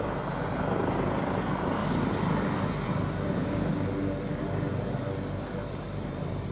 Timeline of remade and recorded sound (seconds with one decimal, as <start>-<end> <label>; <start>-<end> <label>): 0.0-1.8 remade; 1.8-5.7 recorded; 5.7-6.5 remade